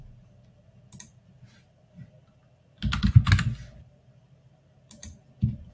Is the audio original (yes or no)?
yes